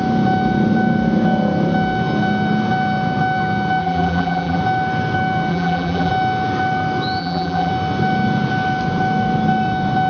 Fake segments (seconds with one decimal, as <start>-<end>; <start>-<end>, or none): 3.8-4.6; 5.5-6.1; 7.2-7.7